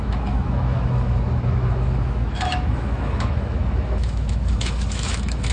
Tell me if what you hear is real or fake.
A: fake